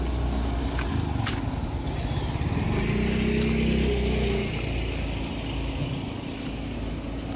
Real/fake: real